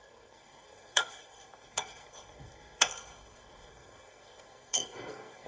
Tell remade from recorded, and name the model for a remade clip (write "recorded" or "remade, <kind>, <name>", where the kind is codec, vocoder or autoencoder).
remade, codec, SNAC